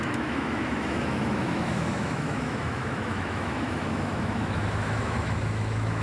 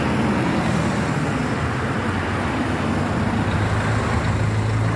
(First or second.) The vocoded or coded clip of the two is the first